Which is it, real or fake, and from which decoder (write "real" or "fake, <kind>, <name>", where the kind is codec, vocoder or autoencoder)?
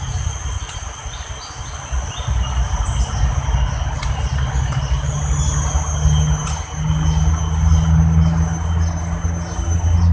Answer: real